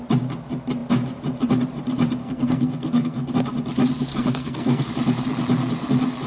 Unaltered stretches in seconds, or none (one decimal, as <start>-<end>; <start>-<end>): 0.0-2.2; 3.3-4.1; 4.9-6.3